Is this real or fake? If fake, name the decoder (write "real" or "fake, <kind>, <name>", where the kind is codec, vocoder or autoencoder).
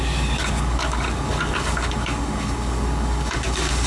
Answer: fake, codec, DAC